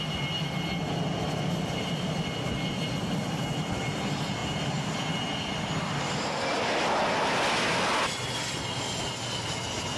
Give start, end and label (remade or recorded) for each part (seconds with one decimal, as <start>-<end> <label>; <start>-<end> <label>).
0.0-10.0 recorded